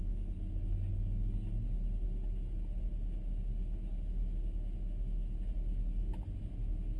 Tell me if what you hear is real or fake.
real